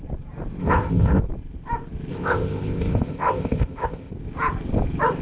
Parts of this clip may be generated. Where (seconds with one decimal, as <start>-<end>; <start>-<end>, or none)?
0.6-1.2; 2.1-4.1